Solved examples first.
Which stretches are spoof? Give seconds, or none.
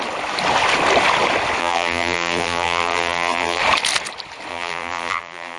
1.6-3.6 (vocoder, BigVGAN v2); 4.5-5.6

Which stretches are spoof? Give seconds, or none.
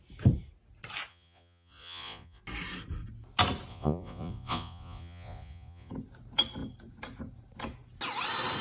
1.1-2.4 (vocoder, Vocos); 3.7-5.9